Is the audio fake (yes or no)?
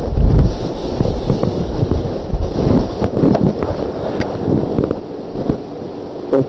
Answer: no